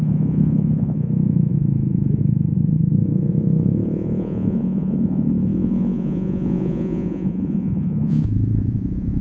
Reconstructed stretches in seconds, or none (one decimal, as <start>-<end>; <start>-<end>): 0.0-9.2